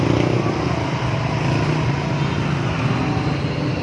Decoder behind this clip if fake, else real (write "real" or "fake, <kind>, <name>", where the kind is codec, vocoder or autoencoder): real